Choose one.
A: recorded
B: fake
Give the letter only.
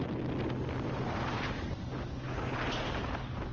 A